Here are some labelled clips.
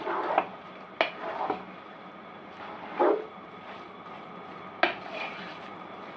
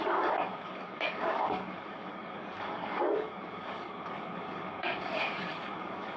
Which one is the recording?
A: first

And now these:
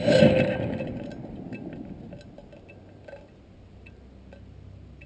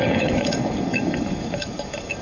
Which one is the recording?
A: first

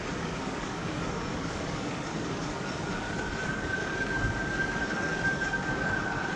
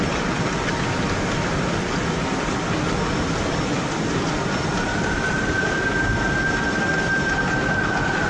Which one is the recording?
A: second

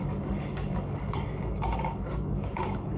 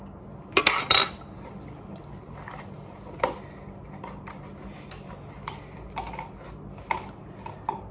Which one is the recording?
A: second